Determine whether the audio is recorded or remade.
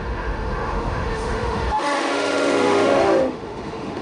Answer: remade